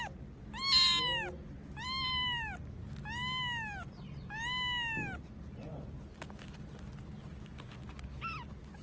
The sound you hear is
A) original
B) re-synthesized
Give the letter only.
A